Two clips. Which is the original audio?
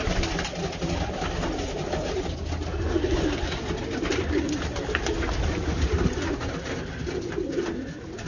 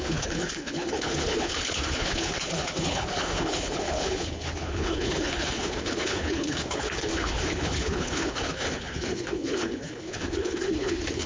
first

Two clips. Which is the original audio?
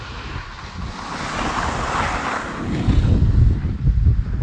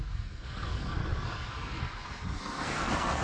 first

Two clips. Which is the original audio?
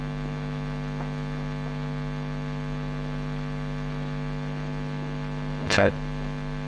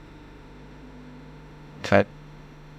first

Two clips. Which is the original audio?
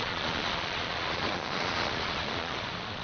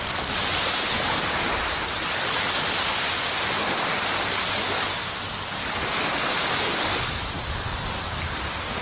second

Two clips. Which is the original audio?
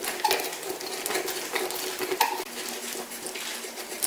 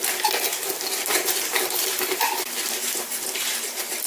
first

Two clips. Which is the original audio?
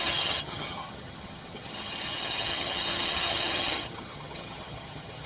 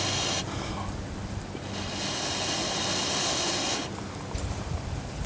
second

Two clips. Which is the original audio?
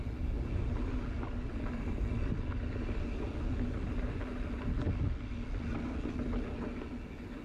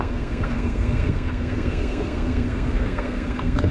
first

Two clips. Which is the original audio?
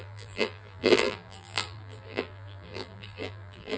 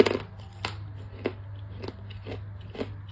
second